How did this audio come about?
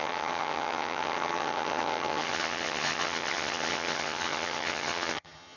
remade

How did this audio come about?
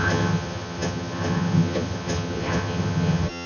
remade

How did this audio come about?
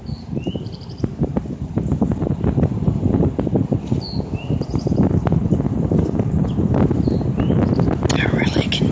recorded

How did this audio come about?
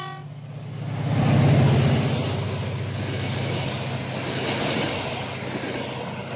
recorded